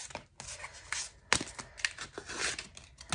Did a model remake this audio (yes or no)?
no